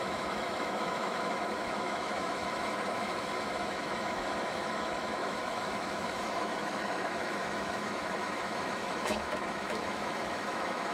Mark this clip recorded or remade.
remade